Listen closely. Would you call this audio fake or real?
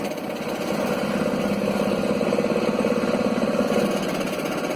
real